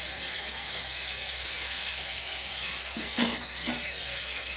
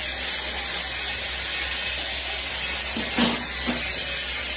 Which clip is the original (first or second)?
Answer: second